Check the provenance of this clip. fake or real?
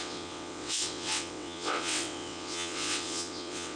fake